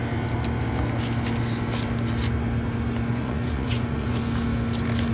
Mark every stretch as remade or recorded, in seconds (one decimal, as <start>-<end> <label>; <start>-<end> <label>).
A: 0.0-3.1 recorded; 3.1-4.2 remade; 4.2-5.1 recorded